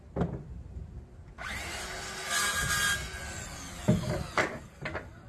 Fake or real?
real